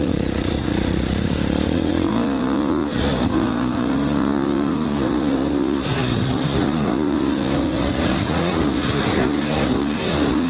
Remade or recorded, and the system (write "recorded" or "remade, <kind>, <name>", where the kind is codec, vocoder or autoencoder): remade, vocoder, Vocos